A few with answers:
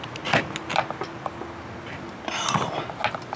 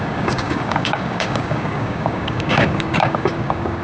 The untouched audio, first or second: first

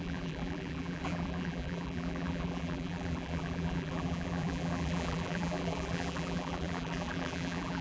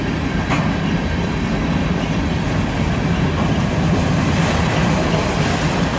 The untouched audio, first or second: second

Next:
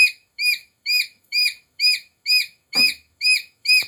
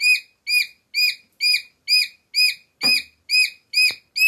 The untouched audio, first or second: second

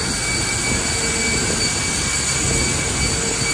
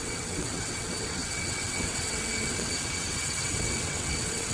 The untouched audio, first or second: first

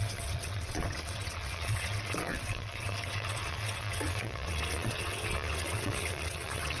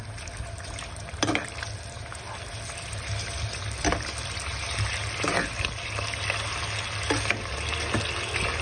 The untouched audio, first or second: second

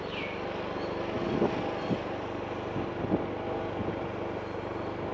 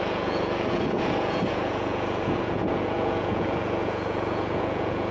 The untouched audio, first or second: first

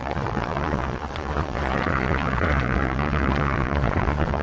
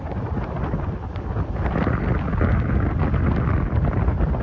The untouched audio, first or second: second